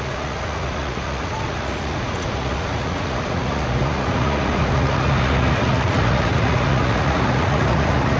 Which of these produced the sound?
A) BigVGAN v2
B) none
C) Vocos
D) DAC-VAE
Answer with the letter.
C